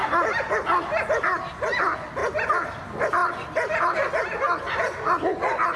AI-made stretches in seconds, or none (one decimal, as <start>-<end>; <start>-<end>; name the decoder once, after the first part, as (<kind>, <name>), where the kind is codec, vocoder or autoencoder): 2.2-2.7 (vocoder, BigVGAN v2); 3.2-4.1